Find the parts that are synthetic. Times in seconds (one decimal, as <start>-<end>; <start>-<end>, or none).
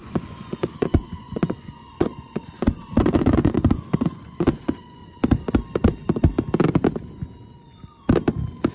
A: 0.0-5.0